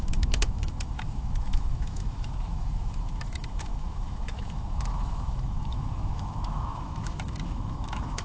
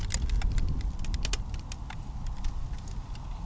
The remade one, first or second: first